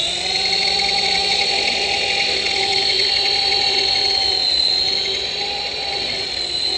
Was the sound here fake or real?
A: fake